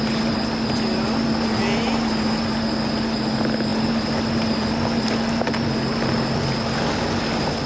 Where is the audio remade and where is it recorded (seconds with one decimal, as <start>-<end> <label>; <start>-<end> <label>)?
0.0-7.7 recorded